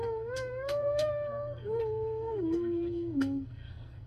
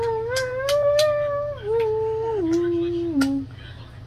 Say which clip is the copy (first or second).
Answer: first